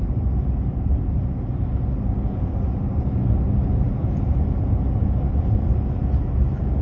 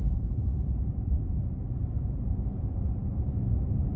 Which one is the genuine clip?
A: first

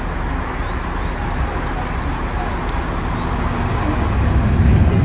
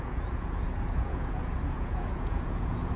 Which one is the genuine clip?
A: first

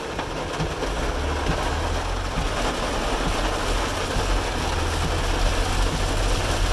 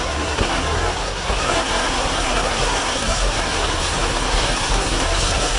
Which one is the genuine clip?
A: first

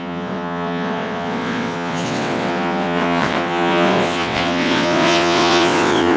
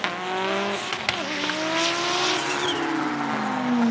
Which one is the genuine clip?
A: second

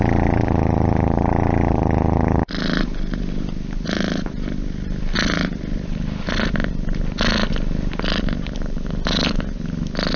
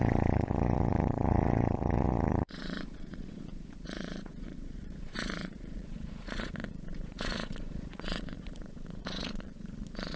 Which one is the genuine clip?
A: first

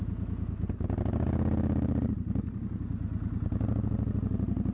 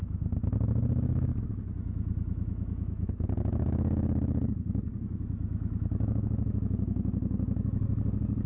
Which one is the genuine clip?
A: first